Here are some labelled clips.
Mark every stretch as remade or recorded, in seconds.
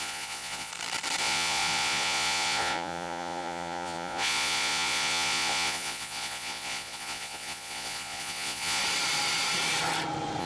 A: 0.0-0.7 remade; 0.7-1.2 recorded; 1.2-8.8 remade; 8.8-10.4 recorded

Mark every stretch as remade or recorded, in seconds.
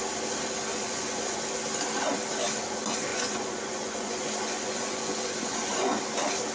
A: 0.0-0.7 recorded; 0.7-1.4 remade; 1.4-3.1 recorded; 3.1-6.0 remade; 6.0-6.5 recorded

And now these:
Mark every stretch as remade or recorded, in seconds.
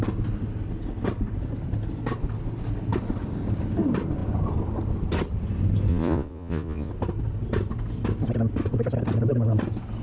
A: 0.0-5.9 recorded; 5.9-6.9 remade; 6.9-10.0 recorded